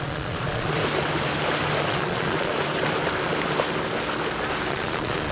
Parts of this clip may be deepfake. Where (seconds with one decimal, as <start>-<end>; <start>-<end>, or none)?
0.0-0.8; 1.8-2.5; 4.7-5.3